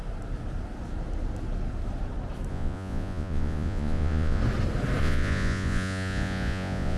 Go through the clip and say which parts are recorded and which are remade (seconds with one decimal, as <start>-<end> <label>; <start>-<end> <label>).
0.0-2.5 recorded; 2.5-4.4 remade; 4.4-5.0 recorded; 5.0-7.0 remade